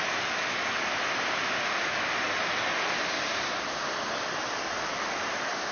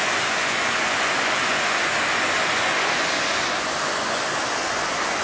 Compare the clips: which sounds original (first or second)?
first